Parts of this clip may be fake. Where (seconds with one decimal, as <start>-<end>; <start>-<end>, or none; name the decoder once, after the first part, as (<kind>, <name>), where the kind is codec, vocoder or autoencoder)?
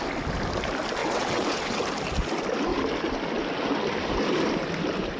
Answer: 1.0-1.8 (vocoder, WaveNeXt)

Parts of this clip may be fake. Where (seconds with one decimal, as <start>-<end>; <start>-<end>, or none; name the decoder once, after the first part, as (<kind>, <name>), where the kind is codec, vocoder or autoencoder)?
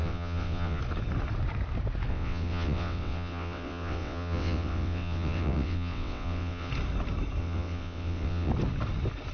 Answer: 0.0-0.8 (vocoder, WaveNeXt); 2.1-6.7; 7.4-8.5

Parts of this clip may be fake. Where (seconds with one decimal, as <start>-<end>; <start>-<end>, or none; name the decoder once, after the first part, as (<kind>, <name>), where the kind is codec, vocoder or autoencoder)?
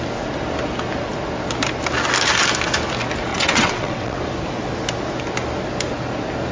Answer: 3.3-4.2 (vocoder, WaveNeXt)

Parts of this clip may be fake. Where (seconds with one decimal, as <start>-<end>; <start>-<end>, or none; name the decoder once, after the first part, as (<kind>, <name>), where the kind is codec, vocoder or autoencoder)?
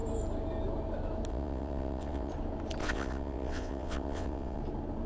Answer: 1.3-2.3 (vocoder, WaveNeXt); 2.8-4.6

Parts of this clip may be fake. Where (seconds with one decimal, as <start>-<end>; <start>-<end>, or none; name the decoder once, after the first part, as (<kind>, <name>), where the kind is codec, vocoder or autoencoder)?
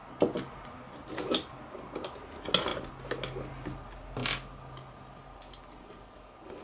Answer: none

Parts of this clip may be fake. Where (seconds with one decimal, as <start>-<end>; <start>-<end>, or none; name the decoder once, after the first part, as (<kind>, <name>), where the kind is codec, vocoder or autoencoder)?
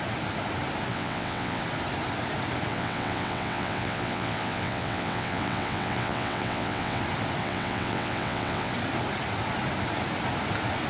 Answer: 0.9-1.6 (vocoder, WaveNeXt); 2.7-7.0; 7.4-8.7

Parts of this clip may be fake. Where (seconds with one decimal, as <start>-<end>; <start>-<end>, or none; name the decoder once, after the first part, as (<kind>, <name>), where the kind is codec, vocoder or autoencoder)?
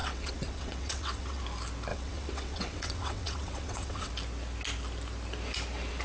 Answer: 0.0-1.4 (vocoder, WaveNeXt); 1.9-4.1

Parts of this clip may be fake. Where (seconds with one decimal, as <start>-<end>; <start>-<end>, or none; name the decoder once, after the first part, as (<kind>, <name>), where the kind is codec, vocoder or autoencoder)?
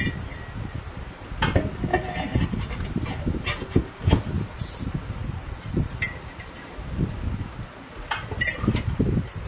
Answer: none